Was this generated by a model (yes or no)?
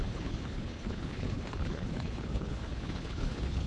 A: yes